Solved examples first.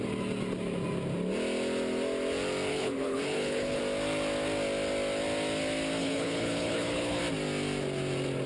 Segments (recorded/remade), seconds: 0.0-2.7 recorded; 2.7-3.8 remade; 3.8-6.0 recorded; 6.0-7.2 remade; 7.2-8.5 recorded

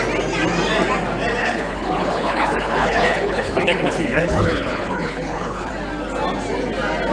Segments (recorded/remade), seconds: 0.0-1.4 recorded; 1.4-5.7 remade; 5.7-7.1 recorded

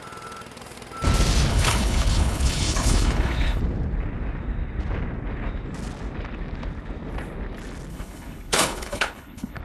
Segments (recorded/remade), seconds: 0.0-1.5 recorded; 1.5-3.6 remade; 3.6-7.9 recorded; 7.9-9.6 remade